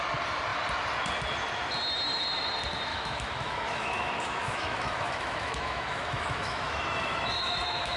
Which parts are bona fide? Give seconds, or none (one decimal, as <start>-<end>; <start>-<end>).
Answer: 0.0-2.9